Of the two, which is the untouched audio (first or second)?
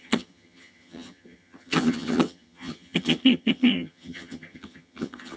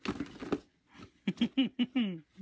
second